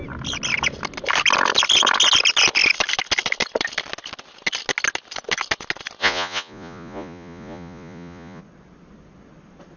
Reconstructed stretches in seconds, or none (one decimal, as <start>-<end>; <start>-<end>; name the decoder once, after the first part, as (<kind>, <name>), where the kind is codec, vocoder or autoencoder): 6.0-8.4 (vocoder, Vocos)